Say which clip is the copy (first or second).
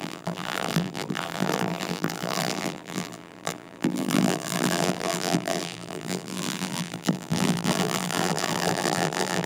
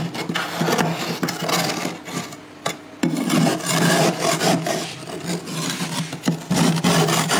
first